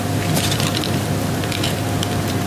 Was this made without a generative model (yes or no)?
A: no